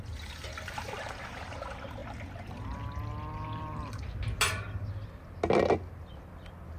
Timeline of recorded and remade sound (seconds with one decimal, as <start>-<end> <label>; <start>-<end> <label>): 0.0-6.8 recorded

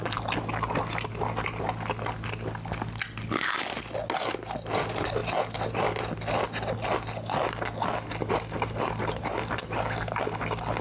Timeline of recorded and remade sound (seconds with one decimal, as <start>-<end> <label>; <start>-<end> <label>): 0.0-10.8 recorded

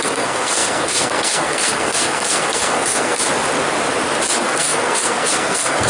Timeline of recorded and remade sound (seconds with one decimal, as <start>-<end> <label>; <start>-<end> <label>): 0.0-3.2 remade; 3.2-4.3 recorded; 4.3-5.9 remade

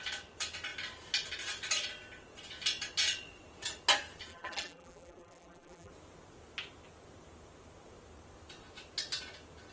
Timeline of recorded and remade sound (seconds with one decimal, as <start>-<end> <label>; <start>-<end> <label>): 0.0-4.3 recorded; 4.3-5.9 remade; 5.9-9.7 recorded